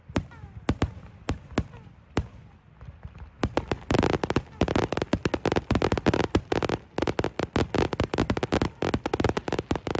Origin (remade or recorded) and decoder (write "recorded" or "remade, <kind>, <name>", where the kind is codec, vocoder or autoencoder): recorded